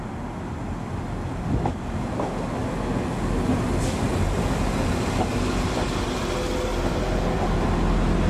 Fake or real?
real